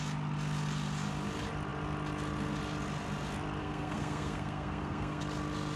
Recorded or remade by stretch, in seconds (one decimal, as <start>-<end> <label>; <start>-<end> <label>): 0.0-3.6 recorded; 3.6-5.2 remade; 5.2-5.8 recorded